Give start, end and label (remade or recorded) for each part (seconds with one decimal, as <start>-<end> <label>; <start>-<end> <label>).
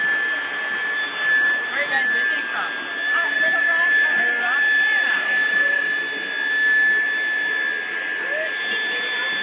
0.0-9.4 recorded